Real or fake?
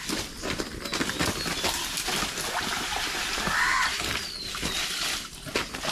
real